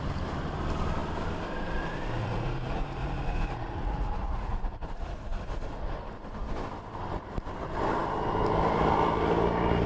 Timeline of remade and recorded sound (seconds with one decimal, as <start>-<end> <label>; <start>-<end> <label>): 0.0-2.2 recorded; 2.2-5.8 remade; 5.8-9.9 recorded